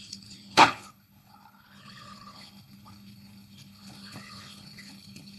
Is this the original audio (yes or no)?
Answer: no